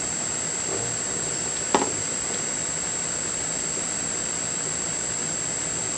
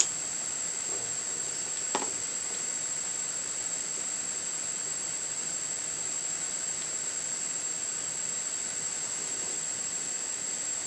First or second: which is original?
first